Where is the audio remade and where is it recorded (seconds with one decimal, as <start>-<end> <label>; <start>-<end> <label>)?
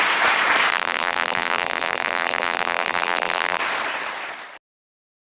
0.0-0.7 recorded; 0.7-3.6 remade; 3.6-5.4 recorded